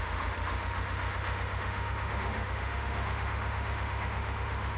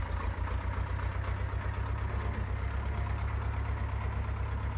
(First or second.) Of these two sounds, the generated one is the first